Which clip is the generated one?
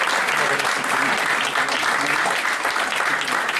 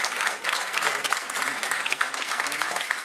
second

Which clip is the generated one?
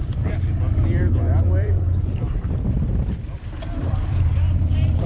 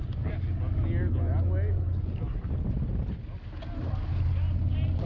first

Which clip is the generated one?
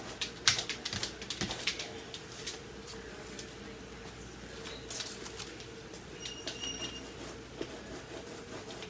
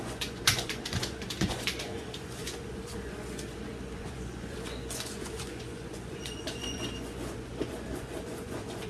second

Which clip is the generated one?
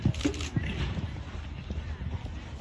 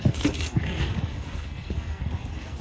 second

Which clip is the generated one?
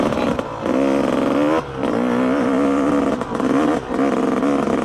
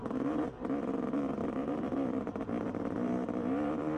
second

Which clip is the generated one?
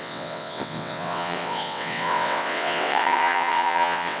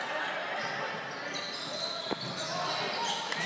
first